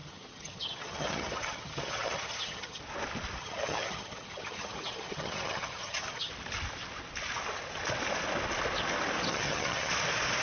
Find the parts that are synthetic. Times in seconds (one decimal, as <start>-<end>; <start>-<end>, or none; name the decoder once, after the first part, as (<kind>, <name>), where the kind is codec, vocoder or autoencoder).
0.0-2.8 (vocoder, HiFi-GAN); 3.4-6.3; 9.3-9.9